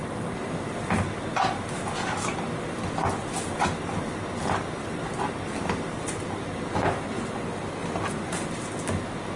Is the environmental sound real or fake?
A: real